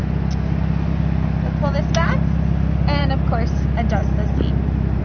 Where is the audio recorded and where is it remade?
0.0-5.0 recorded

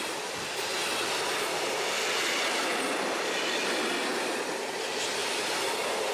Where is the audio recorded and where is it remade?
0.0-6.1 recorded

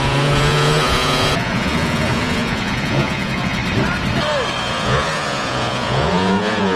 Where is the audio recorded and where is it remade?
0.0-3.6 remade; 3.6-4.6 recorded; 4.6-6.8 remade

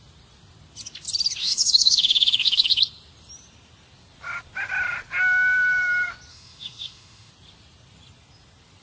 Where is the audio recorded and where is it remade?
0.0-1.4 recorded; 1.4-2.8 remade; 2.8-6.3 recorded; 6.3-7.3 remade; 7.3-8.8 recorded

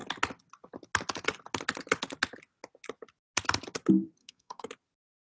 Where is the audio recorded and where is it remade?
0.0-4.2 recorded; 4.2-4.7 remade; 4.7-5.2 recorded

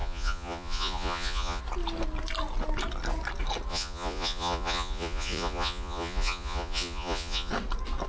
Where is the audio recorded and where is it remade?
0.0-1.6 remade; 1.6-3.7 recorded; 3.7-7.5 remade; 7.5-8.1 recorded

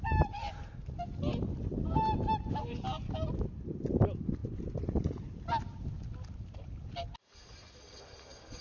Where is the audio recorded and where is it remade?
0.0-8.6 recorded